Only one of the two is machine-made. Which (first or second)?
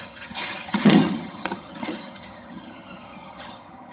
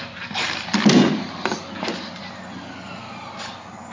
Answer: first